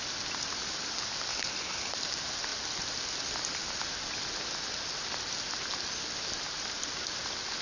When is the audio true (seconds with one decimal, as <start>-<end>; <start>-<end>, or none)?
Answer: 0.0-1.3; 1.9-7.6